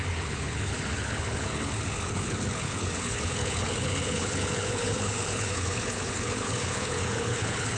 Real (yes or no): no